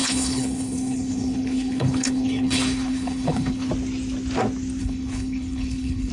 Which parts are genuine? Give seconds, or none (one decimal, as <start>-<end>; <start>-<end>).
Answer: 3.7-4.8